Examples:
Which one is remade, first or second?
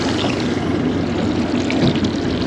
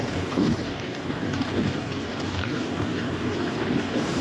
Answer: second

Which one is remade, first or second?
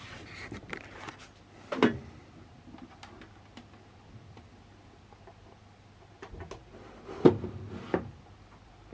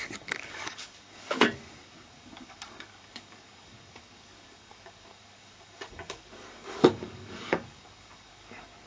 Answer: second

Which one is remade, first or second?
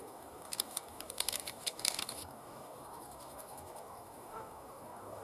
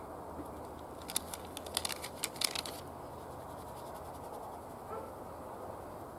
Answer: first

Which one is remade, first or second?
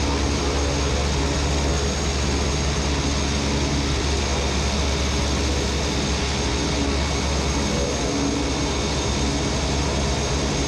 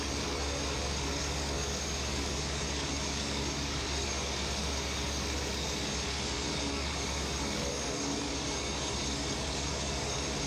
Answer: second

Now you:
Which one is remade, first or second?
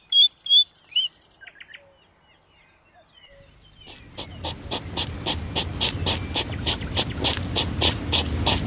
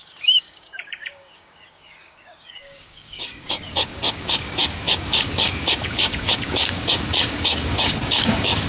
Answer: second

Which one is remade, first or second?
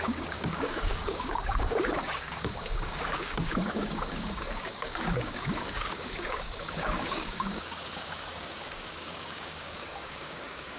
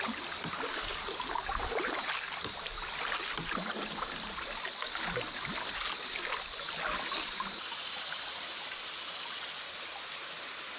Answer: first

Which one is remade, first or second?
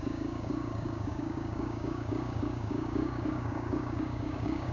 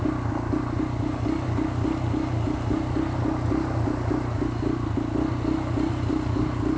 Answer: first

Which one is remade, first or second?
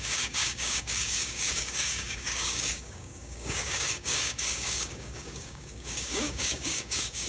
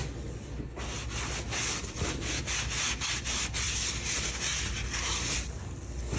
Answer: first